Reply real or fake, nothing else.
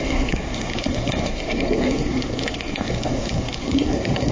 fake